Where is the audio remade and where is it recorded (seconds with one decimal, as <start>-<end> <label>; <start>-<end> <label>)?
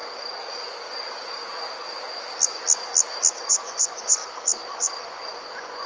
0.0-3.5 recorded; 3.5-4.2 remade; 4.2-5.0 recorded; 5.0-5.9 remade